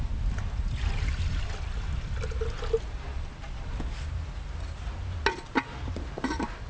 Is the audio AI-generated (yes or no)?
no